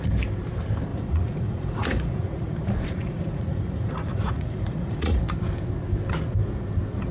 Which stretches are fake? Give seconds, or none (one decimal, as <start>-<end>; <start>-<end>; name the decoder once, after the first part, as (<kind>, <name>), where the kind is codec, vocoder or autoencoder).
0.9-5.2 (vocoder, Vocos)